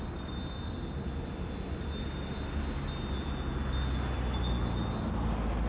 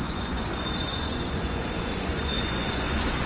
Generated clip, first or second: second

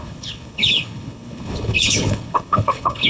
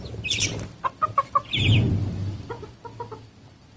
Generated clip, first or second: first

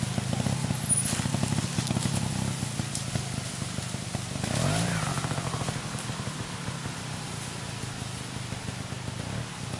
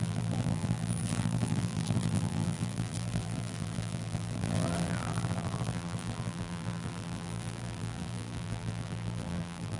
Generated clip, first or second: second